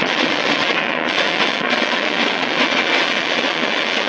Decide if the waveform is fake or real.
fake